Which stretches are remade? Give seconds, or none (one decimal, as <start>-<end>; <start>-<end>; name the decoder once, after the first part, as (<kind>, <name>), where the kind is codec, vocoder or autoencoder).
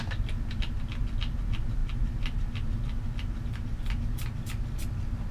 none